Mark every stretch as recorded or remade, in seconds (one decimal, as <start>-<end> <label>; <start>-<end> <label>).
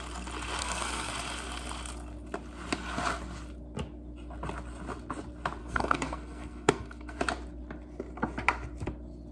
0.0-0.6 recorded; 0.6-1.1 remade; 1.1-5.6 recorded; 5.6-7.2 remade; 7.2-9.3 recorded